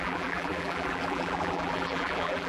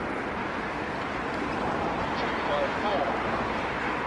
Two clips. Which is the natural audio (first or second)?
second